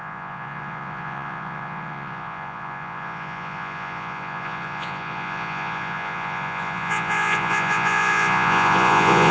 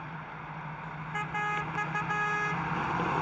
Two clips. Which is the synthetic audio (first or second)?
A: first